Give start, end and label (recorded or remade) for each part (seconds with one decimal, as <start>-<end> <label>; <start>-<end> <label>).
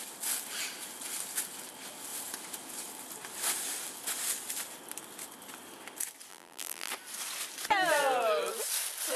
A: 0.0-6.3 recorded; 6.3-6.9 remade; 6.9-9.2 recorded